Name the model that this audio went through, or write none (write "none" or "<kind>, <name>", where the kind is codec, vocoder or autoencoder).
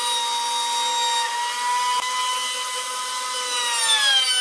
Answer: none